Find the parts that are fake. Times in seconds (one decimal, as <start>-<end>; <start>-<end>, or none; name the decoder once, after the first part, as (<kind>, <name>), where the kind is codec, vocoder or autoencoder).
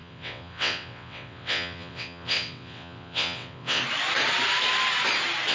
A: 0.0-3.8 (vocoder, WaveNeXt)